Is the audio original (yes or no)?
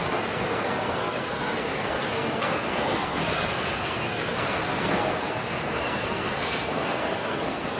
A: no